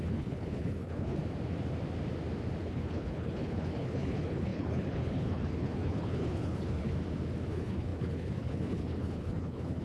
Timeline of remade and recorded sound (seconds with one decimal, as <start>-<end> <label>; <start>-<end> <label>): 0.0-1.2 remade; 1.2-2.6 recorded; 2.6-6.9 remade; 6.9-7.5 recorded; 7.5-9.8 remade